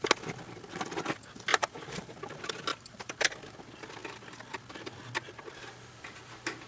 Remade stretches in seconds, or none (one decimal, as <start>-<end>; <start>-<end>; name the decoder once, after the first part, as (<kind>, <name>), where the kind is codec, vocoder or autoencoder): 1.5-2.2 (vocoder, BigVGAN v2); 2.7-3.3

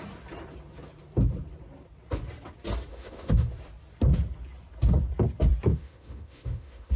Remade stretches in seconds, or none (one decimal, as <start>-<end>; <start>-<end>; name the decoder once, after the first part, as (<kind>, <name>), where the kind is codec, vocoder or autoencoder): 2.9-3.5 (autoencoder, DAC-VAE); 5.7-7.0